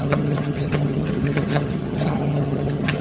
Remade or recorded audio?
remade